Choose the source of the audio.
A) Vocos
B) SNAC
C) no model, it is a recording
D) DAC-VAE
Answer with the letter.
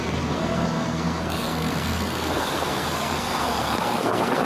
B